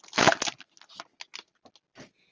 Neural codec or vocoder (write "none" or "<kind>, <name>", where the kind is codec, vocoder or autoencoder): none